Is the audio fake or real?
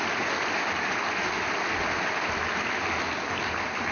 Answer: real